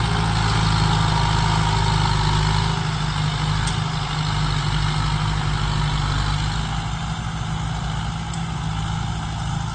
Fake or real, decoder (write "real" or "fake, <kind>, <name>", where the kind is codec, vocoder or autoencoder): real